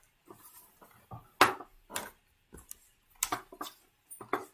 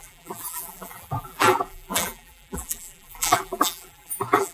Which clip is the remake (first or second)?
second